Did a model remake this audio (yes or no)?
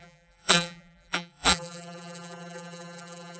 yes